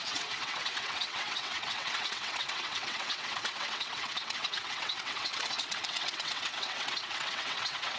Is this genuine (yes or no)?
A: no